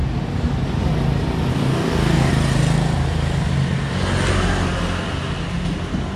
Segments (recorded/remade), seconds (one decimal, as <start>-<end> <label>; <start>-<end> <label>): 0.0-1.5 recorded; 1.5-2.3 remade; 2.3-6.2 recorded